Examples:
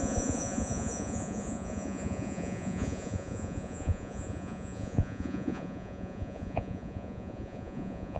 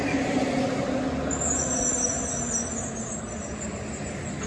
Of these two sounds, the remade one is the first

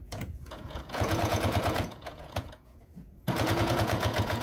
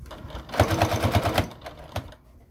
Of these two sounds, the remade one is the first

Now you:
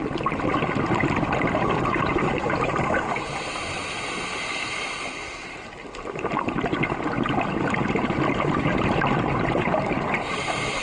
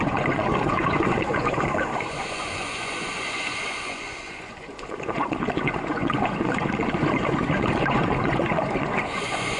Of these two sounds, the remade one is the second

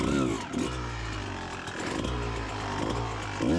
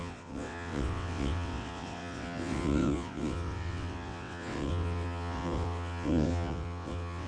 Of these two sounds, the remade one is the second